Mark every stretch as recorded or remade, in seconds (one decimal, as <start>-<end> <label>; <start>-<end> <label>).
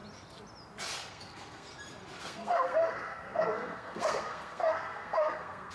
0.0-1.1 recorded; 1.1-1.7 remade; 1.7-2.2 recorded; 2.2-5.7 remade